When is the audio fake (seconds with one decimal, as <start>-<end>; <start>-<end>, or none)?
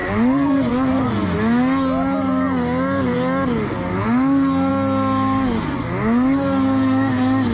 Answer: 0.0-0.7